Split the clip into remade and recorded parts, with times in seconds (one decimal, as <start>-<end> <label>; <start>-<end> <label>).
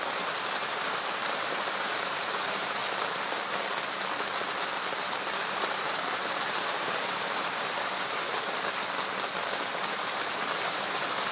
0.0-2.8 remade; 2.8-5.5 recorded; 5.5-8.3 remade; 8.3-9.9 recorded; 9.9-11.3 remade